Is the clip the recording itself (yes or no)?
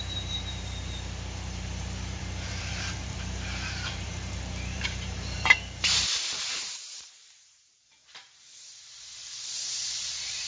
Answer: no